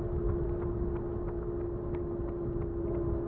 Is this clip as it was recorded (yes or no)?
yes